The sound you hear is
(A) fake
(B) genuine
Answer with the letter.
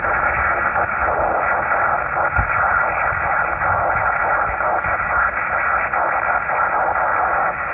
B